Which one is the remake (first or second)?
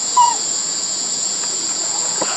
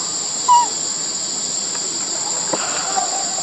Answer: first